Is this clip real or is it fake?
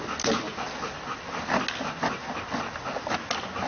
real